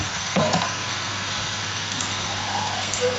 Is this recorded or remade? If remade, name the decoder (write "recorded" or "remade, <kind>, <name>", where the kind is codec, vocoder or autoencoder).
remade, codec, SNAC